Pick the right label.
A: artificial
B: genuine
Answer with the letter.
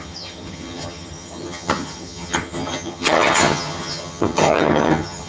A